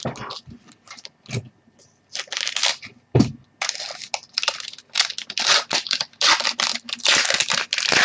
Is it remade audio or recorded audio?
recorded